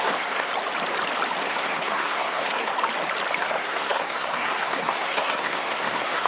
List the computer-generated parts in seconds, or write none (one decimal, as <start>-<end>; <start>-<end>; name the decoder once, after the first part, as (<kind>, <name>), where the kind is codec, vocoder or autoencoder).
0.0-0.5 (codec, SNAC); 1.4-2.7; 3.4-6.3